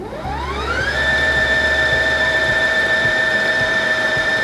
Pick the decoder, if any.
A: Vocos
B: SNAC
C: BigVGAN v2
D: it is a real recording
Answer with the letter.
C